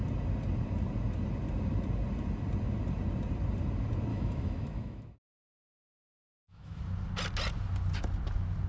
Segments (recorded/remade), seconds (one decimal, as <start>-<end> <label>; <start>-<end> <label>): 0.0-4.1 recorded; 4.1-6.8 remade; 6.8-8.7 recorded